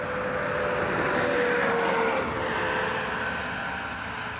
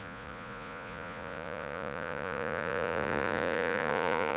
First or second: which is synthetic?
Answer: second